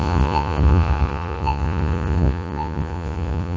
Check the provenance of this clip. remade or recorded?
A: remade